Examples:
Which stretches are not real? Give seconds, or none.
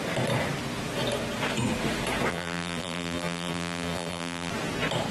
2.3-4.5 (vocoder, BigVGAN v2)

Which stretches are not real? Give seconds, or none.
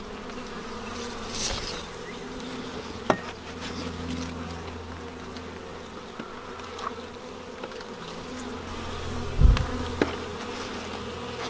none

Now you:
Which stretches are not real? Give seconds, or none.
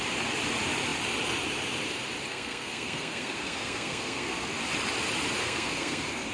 2.3-4.5 (codec, SNAC); 5.4-6.3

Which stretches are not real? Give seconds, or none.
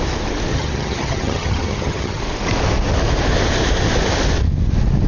0.5-2.2 (vocoder, HiFi-GAN)